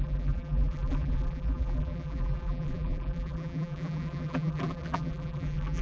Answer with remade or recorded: remade